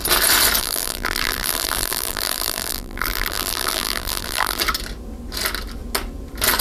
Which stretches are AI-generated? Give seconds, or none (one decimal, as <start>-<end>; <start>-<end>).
0.6-4.6